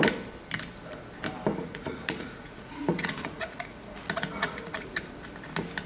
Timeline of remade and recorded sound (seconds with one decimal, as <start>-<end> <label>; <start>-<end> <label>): 0.0-1.5 recorded; 1.5-5.0 remade; 5.0-5.9 recorded